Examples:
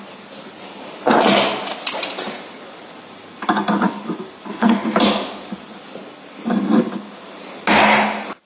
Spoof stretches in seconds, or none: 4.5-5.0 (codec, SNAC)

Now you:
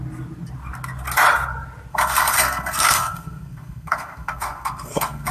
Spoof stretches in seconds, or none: 1.9-5.3 (codec, SNAC)

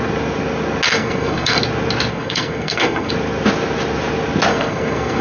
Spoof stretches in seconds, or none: 0.9-1.6 (codec, SNAC); 2.1-3.1; 4.5-5.2

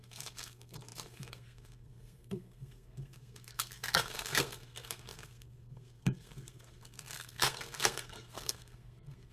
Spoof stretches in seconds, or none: 0.0-9.3 (codec, SNAC)

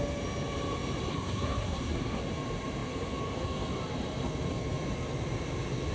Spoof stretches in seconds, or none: 1.1-2.2 (codec, SNAC)

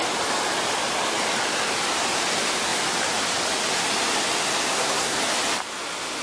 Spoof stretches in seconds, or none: 4.7-5.2 (codec, SNAC)